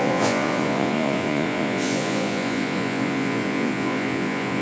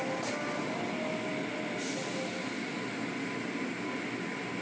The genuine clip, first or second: second